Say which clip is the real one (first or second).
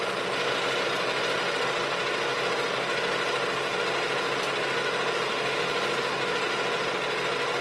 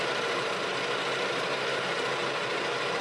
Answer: first